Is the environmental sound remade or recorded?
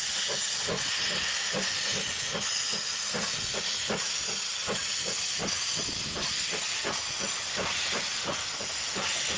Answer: recorded